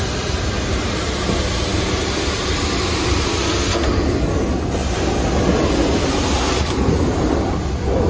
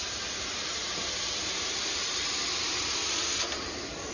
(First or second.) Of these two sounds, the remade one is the second